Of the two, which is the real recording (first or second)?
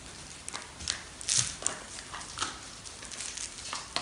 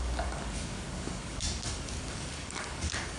first